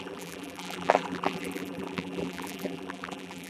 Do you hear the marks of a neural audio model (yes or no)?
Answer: yes